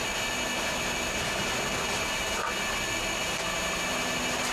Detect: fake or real real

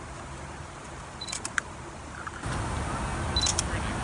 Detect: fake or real real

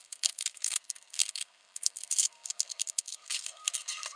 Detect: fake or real fake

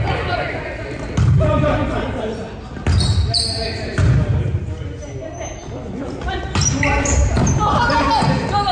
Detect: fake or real real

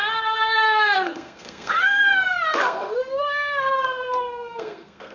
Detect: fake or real fake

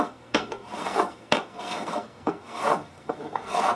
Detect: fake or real fake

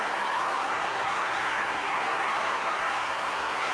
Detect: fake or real fake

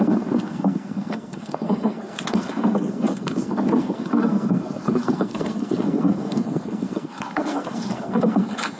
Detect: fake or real fake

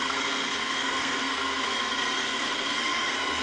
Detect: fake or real fake